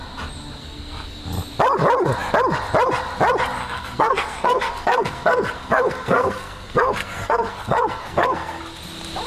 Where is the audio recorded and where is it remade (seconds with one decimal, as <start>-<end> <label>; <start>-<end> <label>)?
0.0-0.6 recorded; 0.6-1.2 remade; 1.2-3.6 recorded; 3.6-8.6 remade; 8.6-9.3 recorded